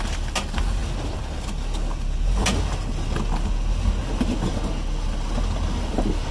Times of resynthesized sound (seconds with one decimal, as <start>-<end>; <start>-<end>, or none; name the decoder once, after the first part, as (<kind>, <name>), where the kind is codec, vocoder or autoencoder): none